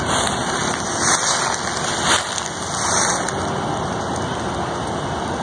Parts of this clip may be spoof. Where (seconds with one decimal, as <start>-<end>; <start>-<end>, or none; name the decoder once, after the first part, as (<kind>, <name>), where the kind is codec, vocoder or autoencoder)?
none